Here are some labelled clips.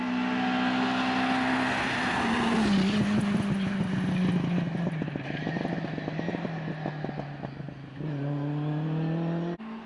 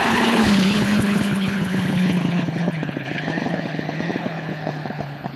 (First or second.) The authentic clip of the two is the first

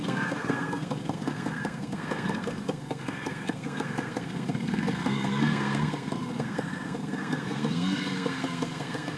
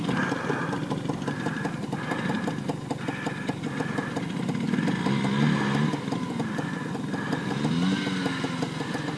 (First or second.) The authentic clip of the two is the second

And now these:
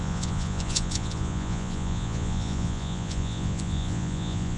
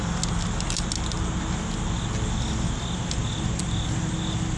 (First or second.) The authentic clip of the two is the second